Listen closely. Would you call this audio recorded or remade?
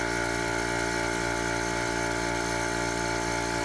recorded